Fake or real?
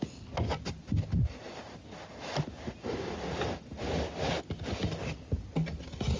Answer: real